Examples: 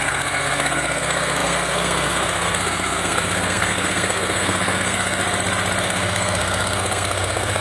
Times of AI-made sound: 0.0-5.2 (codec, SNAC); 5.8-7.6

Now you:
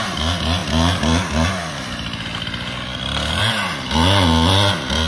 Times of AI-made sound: none

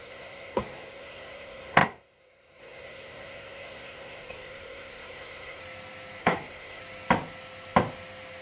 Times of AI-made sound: 0.0-5.6 (codec, SNAC); 6.2-6.8

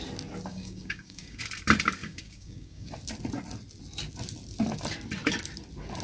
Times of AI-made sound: 0.5-1.4 (codec, DAC); 2.0-2.9

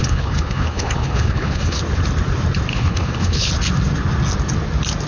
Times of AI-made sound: 0.0-1.8 (codec, HILCodec); 2.7-3.5

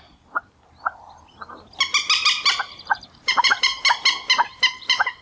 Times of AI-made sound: 0.0-0.4 (vocoder, BigVGAN v2); 2.6-3.7; 4.7-5.2

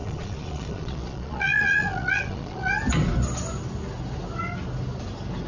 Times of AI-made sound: 0.0-2.7 (vocoder, Vocos)

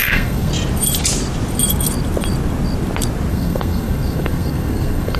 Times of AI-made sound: 0.0-0.5 (codec, SNAC); 3.3-5.2